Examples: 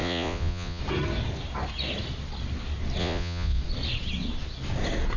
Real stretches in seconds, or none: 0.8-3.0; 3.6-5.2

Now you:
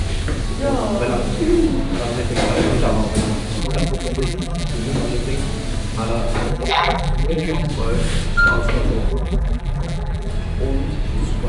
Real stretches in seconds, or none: 0.0-3.6; 4.7-6.5; 7.7-9.1; 10.3-11.5